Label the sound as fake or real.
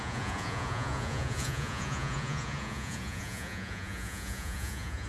fake